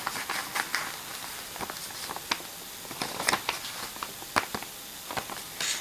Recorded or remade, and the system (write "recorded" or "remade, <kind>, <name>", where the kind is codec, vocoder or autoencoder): recorded